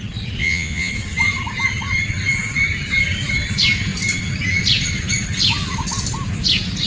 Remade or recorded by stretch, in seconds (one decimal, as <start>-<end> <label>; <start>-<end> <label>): 0.0-0.4 recorded; 0.4-0.9 remade; 0.9-6.9 recorded